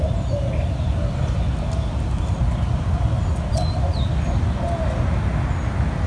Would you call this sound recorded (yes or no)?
yes